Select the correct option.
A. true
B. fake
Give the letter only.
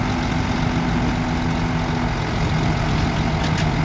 A